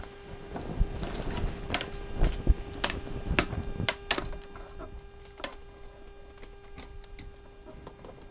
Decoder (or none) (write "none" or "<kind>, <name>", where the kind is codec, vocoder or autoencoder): none